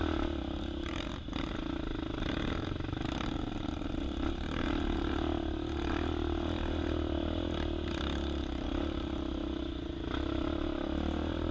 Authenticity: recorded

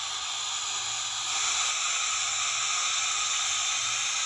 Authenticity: recorded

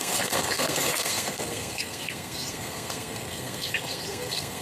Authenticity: remade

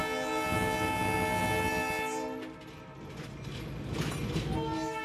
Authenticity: recorded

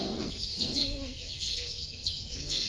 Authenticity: remade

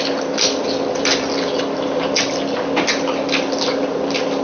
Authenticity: recorded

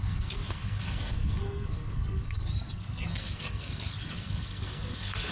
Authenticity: remade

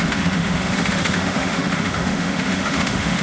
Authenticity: remade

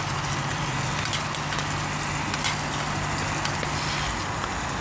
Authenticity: recorded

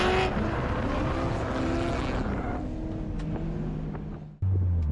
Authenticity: recorded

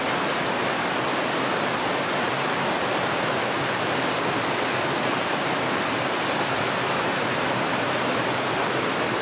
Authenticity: recorded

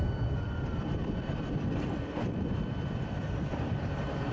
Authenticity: remade